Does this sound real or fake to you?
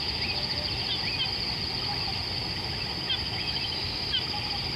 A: real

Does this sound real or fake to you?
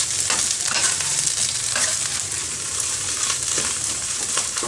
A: fake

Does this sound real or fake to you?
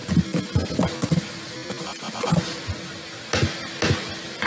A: real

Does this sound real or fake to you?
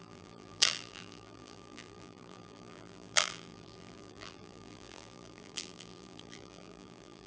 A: fake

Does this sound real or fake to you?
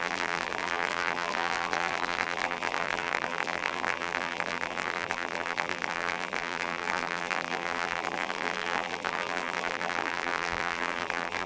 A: fake